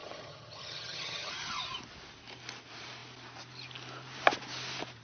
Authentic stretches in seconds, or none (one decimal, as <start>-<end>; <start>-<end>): 1.3-5.0